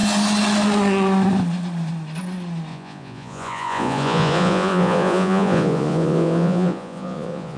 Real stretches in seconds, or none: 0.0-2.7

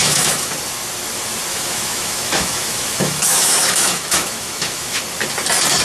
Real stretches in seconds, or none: 0.5-1.5; 5.0-5.8

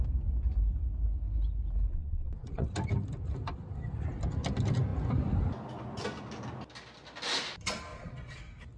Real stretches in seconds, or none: 0.0-1.9; 2.7-7.9; 8.4-8.8